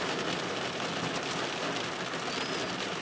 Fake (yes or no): no